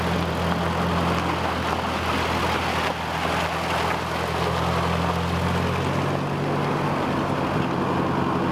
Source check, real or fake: real